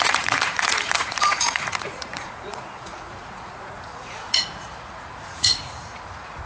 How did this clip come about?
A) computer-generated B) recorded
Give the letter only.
A